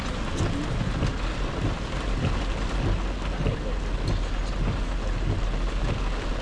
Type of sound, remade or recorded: recorded